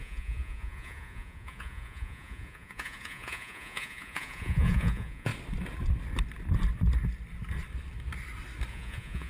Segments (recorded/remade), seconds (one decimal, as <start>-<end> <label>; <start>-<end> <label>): 0.0-5.3 remade; 5.3-8.7 recorded; 8.7-9.3 remade